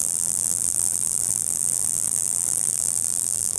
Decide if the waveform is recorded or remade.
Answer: remade